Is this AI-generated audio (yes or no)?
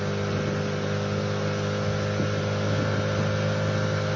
no